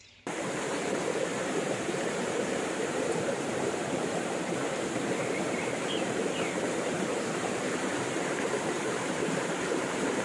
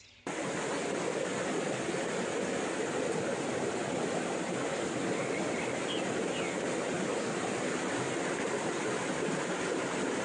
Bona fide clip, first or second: second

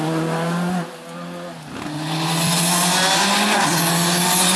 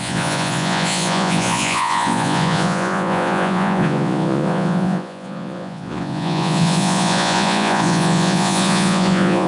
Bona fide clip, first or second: first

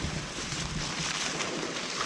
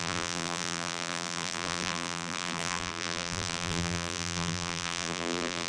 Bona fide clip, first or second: first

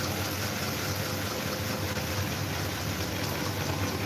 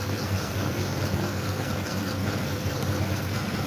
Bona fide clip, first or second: first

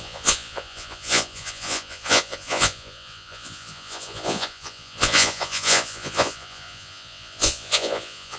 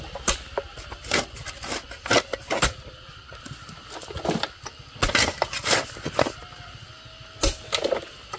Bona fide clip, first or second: second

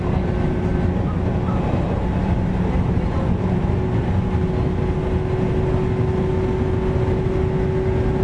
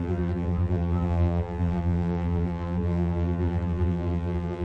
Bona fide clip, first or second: first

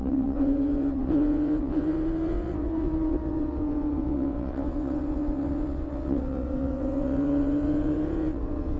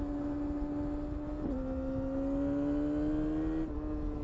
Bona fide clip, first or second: second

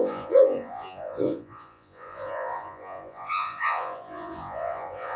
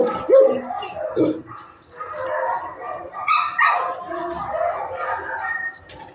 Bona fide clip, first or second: second